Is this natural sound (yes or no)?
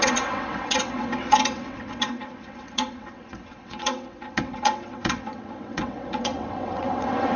no